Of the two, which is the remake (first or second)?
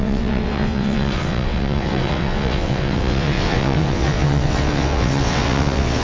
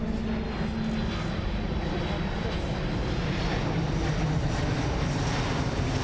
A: first